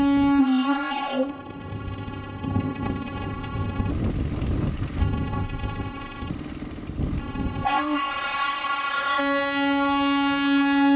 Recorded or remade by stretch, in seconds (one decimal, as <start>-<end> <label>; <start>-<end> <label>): 0.0-0.4 recorded; 0.4-3.9 remade; 3.9-5.0 recorded; 5.0-6.3 remade; 6.3-7.2 recorded; 7.2-9.2 remade; 9.2-11.0 recorded